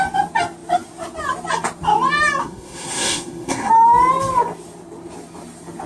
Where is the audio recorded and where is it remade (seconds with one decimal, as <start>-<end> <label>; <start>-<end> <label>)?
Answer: 0.0-2.4 recorded; 2.4-3.7 remade; 3.7-5.9 recorded